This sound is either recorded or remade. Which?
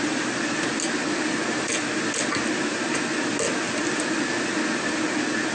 recorded